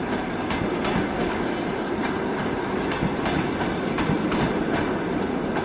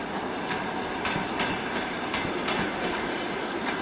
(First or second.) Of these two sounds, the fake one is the second